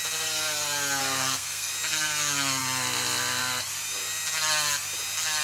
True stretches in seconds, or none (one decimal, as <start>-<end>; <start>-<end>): 0.0-1.0; 1.7-5.4